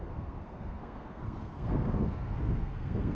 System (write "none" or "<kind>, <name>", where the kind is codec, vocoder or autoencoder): codec, SNAC